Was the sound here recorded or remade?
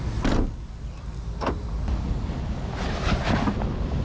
recorded